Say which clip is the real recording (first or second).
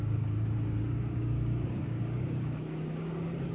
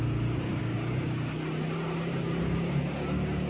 second